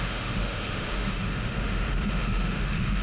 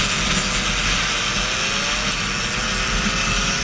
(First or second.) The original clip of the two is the second